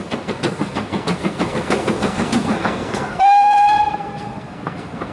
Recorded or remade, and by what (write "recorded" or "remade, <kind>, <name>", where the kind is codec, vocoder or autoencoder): remade, codec, SNAC